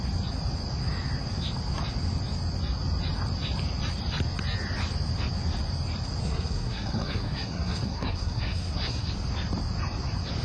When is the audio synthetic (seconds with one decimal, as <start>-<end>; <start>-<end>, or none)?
6.2-9.1